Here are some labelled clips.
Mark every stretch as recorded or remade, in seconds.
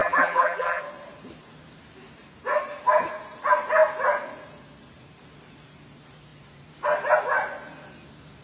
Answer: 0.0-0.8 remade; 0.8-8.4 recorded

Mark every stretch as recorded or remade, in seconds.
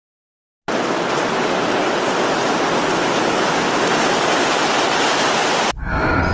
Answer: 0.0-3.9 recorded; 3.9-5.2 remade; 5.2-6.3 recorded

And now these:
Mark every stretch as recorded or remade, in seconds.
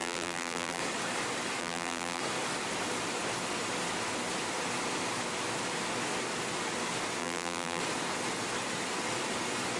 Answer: 0.0-0.8 remade; 0.8-1.6 recorded; 1.6-2.2 remade; 2.2-7.2 recorded; 7.2-7.8 remade; 7.8-9.8 recorded